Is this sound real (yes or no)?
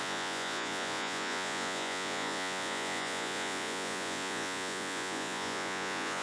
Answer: no